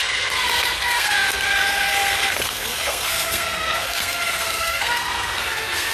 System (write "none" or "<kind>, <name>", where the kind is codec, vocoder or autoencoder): codec, SNAC